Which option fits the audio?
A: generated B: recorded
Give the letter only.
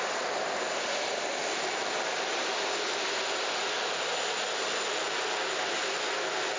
B